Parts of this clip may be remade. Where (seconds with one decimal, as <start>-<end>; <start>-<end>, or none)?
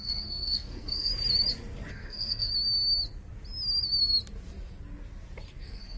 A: 0.0-1.1; 1.9-2.5; 5.6-6.0